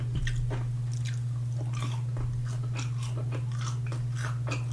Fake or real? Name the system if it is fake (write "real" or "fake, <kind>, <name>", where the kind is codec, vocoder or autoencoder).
real